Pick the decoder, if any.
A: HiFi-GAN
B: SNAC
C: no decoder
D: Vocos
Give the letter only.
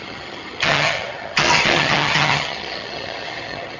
A